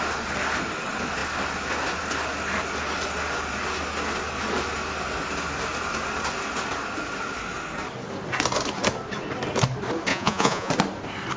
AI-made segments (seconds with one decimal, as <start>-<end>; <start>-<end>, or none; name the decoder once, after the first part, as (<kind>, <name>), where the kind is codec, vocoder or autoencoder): 10.1-10.7 (vocoder, Vocos)